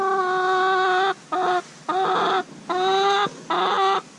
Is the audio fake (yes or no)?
no